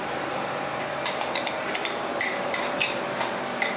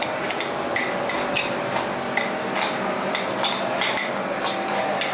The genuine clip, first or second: second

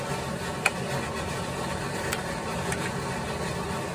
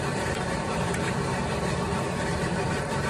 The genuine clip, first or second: first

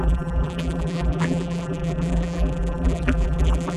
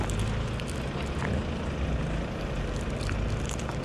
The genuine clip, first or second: second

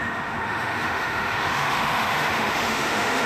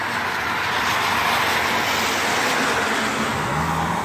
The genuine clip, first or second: second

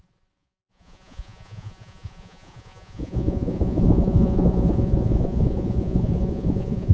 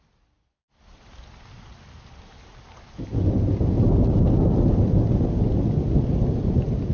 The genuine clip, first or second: second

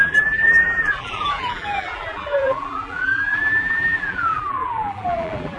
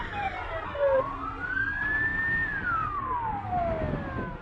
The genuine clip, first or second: second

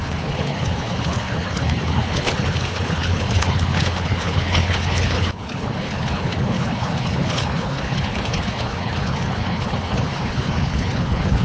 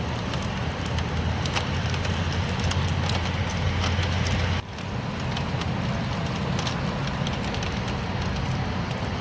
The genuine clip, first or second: second